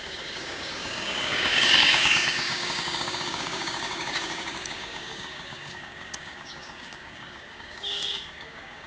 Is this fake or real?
fake